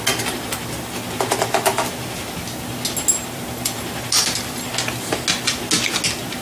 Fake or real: real